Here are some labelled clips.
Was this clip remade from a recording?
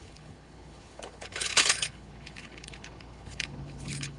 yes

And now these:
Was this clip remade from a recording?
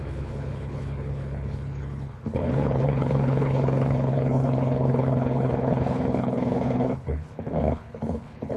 yes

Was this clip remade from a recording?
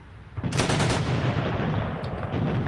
no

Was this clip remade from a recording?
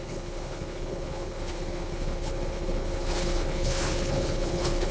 yes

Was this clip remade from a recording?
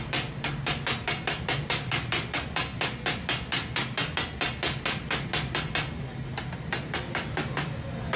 no